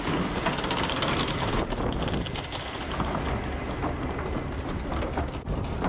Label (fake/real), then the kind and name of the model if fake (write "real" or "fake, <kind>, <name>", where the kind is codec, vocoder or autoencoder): real